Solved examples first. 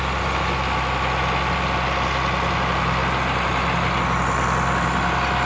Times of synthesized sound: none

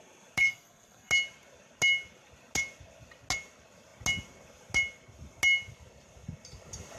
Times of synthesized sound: 0.4-1.1

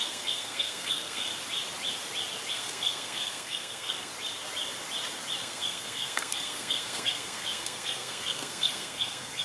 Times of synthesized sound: 0.0-1.3; 2.5-4.1; 5.4-9.4

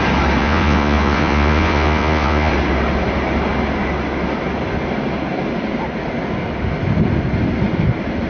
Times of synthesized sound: 0.4-2.5